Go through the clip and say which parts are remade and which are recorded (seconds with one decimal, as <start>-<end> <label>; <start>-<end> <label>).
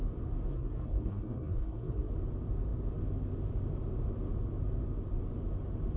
0.0-0.5 recorded; 0.5-2.1 remade; 2.1-6.0 recorded